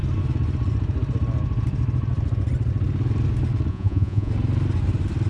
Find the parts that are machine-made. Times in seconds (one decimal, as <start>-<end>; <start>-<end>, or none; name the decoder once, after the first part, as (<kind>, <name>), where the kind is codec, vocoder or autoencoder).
3.7-4.3 (vocoder, Vocos)